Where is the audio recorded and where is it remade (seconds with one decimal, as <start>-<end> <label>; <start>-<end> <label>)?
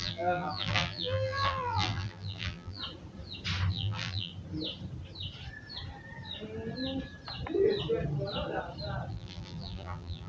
0.0-2.8 remade; 2.8-3.7 recorded; 3.7-4.3 remade; 4.3-9.1 recorded; 9.1-10.3 remade